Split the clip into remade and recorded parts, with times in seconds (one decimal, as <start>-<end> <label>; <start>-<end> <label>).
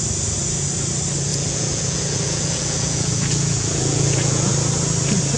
0.0-1.3 recorded; 1.3-4.5 remade; 4.5-5.4 recorded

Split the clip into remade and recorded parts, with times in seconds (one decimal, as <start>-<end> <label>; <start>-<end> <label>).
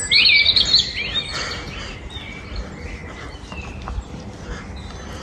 0.0-5.2 recorded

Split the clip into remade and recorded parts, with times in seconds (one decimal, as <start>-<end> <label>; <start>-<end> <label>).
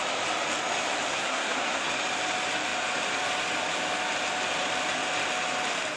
0.0-1.1 recorded; 1.1-1.9 remade; 1.9-6.0 recorded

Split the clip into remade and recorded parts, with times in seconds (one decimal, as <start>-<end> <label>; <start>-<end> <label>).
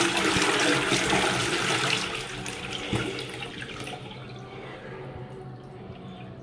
0.0-6.4 recorded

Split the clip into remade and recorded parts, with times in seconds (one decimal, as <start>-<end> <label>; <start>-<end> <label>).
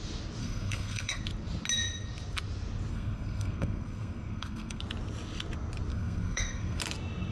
0.0-0.4 recorded; 0.4-1.2 remade; 1.2-2.9 recorded; 2.9-4.8 remade; 4.8-5.9 recorded; 5.9-6.8 remade; 6.8-7.3 recorded